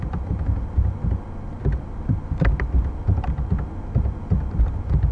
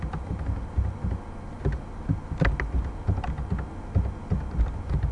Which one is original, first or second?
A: second